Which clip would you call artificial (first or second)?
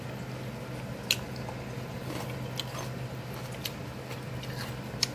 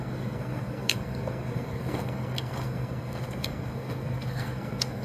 second